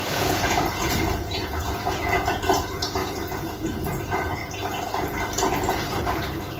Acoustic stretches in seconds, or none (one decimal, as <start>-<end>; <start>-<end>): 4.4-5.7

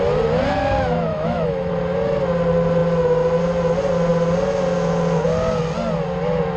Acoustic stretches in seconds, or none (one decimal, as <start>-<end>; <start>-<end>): 0.0-1.1; 1.7-6.6

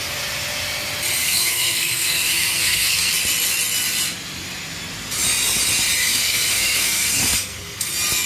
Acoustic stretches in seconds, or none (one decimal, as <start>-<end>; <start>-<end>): 0.0-1.2; 3.1-6.0; 7.9-8.3

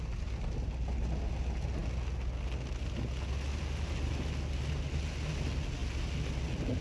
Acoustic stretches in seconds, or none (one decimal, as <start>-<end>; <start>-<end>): 0.0-6.8